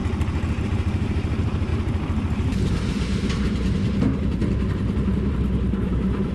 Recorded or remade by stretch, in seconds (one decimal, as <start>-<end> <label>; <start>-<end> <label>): 0.0-0.6 recorded; 0.6-1.7 remade; 1.7-2.7 recorded; 2.7-4.4 remade; 4.4-5.3 recorded; 5.3-6.3 remade